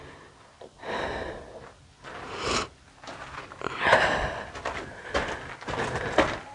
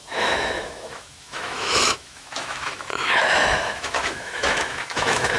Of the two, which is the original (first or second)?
first